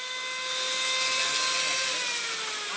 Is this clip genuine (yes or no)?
yes